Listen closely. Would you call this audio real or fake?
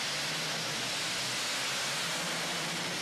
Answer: real